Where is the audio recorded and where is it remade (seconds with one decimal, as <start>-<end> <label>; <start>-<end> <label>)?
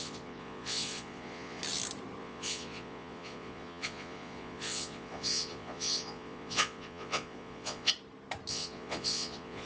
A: 0.0-1.6 remade; 1.6-2.2 recorded; 2.2-7.9 remade; 7.9-8.5 recorded; 8.5-9.7 remade